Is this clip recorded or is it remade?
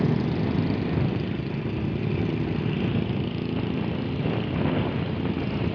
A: recorded